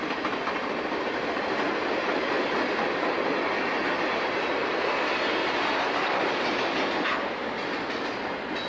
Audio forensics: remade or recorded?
recorded